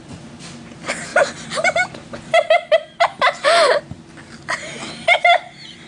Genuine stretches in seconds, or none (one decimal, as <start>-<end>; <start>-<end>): 0.0-1.1; 3.8-5.9